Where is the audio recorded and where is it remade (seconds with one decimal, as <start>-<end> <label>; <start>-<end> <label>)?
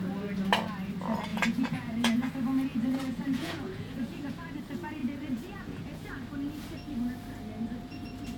0.0-1.3 recorded; 1.3-2.3 remade; 2.3-2.7 recorded; 2.7-4.6 remade; 4.6-5.0 recorded; 5.0-6.1 remade; 6.1-8.4 recorded